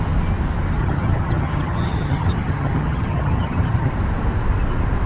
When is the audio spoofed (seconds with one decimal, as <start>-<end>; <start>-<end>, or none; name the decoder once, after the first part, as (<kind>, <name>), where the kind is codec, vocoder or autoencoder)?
0.8-3.9 (vocoder, HiFi-GAN)